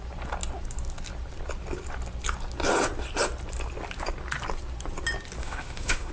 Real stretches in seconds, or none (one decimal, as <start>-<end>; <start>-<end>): 0.0-5.4

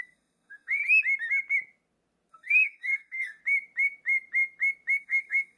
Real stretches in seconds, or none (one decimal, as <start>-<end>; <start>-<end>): 0.8-2.3; 3.4-5.0

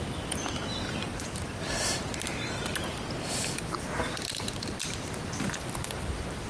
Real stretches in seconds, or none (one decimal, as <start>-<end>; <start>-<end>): 0.0-1.1; 2.5-6.5

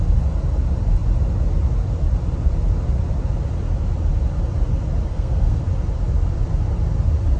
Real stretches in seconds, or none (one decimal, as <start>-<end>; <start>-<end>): 0.0-5.1; 5.6-7.4

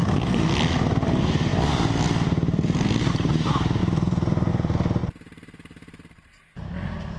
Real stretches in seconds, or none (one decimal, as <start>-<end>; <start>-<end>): 0.0-5.0; 6.2-7.2

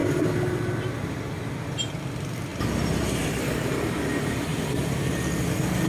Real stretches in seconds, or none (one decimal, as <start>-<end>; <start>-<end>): 0.0-5.9

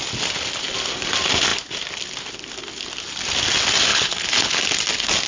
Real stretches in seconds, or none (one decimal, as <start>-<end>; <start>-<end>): 0.0-3.9; 4.6-5.3